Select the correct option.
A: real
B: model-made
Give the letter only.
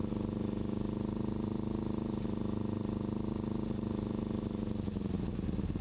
A